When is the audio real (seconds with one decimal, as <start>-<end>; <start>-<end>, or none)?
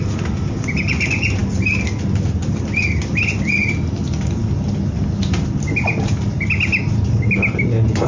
0.0-8.1